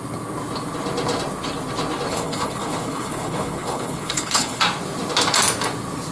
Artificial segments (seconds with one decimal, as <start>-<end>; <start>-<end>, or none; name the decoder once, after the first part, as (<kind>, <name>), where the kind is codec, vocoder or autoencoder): 2.1-4.6 (codec, HILCodec)